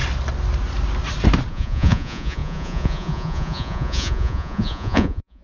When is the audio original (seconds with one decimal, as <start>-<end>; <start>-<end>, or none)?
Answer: 0.0-1.5